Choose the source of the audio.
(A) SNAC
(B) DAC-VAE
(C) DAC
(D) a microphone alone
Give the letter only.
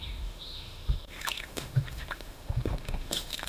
B